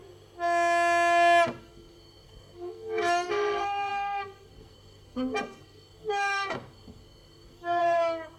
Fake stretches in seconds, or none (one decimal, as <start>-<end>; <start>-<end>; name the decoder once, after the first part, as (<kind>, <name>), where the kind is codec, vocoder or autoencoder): 1.6-8.4 (codec, SNAC)

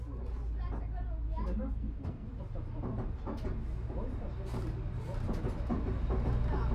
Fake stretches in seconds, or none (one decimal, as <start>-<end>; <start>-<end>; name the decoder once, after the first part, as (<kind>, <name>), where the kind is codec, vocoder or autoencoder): 1.6-2.3 (codec, SNAC)